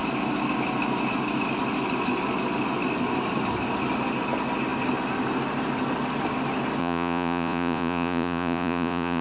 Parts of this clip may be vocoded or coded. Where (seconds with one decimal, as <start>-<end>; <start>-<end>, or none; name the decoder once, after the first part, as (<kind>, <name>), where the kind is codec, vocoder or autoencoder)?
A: 6.8-9.2 (vocoder, Vocos)